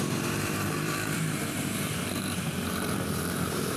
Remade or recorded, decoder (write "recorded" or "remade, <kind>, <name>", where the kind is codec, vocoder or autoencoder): remade, vocoder, BigVGAN v2